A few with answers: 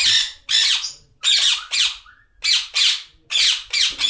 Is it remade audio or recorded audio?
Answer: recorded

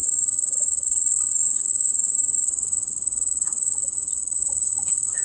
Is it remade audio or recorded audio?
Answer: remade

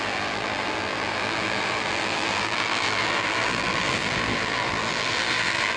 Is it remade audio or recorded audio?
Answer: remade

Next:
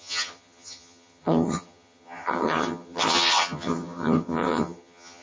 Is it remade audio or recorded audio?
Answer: remade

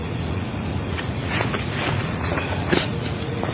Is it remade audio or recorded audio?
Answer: remade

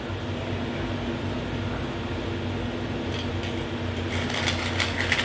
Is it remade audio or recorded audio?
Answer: recorded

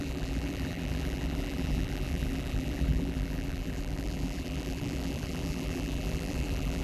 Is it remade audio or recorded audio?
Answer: remade